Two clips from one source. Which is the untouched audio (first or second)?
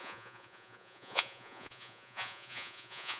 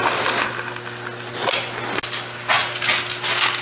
second